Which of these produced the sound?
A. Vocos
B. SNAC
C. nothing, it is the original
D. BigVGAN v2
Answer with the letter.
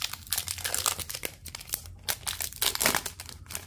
C